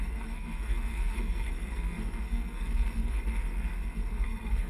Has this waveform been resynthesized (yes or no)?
yes